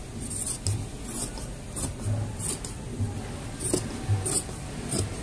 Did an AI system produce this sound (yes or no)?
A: no